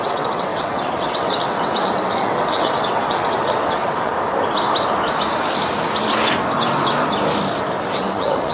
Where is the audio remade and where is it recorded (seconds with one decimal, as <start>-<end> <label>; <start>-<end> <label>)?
0.0-4.1 remade; 4.1-7.8 recorded; 7.8-8.5 remade